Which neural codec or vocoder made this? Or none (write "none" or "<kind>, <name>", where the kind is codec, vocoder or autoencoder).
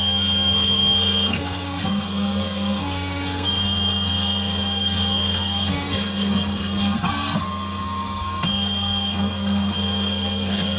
codec, SNAC